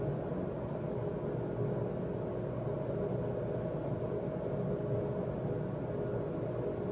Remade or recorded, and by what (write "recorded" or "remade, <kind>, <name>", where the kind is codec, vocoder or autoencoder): recorded